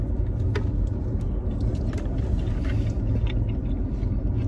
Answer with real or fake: real